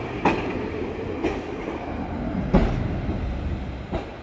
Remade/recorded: recorded